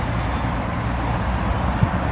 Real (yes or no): yes